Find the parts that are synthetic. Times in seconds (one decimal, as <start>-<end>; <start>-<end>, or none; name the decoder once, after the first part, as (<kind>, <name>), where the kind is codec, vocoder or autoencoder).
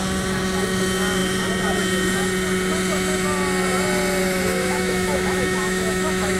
4.2-6.4 (autoencoder, DAC-VAE)